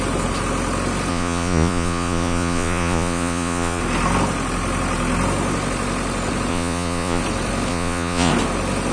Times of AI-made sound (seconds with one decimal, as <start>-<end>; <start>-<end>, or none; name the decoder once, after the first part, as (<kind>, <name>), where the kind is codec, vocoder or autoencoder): 1.1-3.8 (vocoder, Vocos); 6.5-7.2; 7.7-8.3